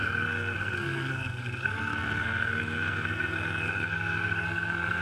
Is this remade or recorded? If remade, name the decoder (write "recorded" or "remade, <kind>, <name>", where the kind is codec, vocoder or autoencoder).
remade, codec, SNAC